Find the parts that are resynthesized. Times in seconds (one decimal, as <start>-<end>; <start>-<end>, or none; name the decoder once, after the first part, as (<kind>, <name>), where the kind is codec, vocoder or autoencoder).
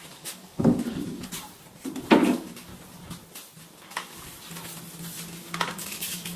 0.0-1.2 (codec, DAC); 2.2-2.7; 3.8-4.3; 5.4-6.4